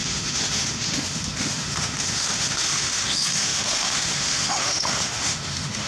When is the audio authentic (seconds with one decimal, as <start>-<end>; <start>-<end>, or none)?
none